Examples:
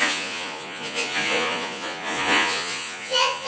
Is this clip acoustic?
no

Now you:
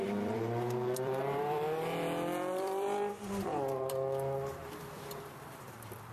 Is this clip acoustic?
no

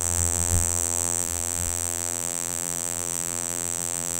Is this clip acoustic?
no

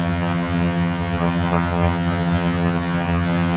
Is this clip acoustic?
no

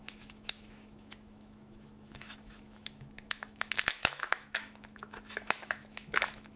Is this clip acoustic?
no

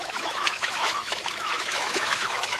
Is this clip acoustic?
no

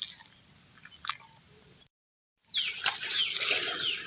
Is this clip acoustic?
yes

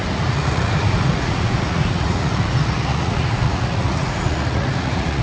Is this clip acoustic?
no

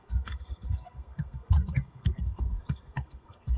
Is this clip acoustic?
no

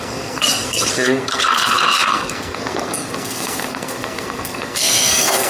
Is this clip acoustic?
no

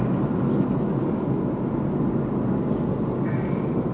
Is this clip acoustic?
yes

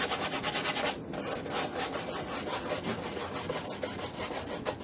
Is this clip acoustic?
yes